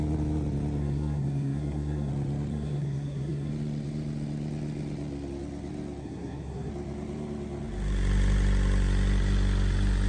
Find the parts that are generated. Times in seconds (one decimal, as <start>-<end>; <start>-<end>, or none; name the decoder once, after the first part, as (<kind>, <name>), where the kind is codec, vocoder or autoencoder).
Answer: 0.8-2.1 (codec, SNAC); 2.5-3.5; 6.0-6.7